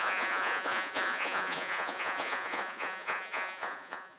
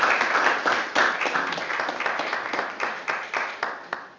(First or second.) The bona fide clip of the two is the second